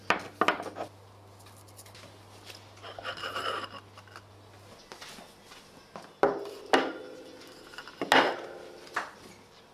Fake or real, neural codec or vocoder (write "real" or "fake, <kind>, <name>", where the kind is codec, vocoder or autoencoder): real